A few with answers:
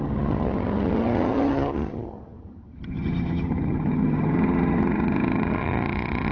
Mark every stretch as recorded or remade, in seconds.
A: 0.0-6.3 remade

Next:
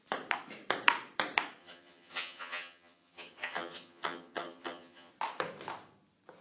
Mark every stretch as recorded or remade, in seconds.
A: 0.0-1.6 recorded; 1.6-5.1 remade; 5.1-6.4 recorded

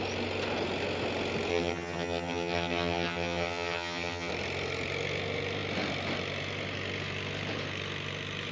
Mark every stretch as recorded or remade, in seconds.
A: 0.0-1.5 recorded; 1.5-4.3 remade; 4.3-8.5 recorded